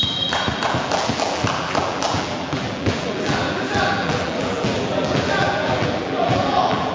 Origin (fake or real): fake